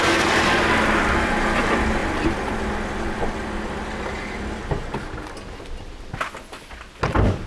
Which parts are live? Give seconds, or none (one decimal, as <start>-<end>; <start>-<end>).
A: 0.0-7.5